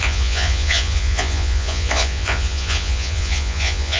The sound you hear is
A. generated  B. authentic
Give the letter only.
A